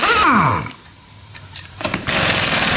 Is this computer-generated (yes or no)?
yes